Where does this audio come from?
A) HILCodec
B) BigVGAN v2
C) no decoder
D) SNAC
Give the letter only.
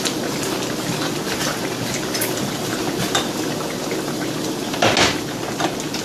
C